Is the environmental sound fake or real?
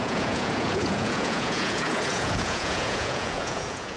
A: fake